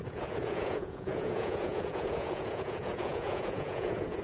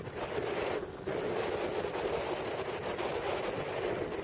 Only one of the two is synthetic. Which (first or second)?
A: first